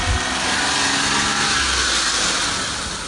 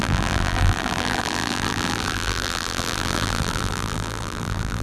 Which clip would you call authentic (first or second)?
first